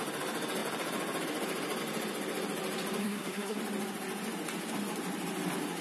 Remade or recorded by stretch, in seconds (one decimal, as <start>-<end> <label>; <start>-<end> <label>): 0.0-3.0 recorded; 3.0-3.6 remade; 3.6-5.8 recorded